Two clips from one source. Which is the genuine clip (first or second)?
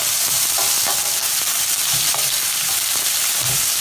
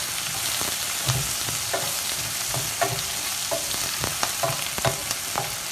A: second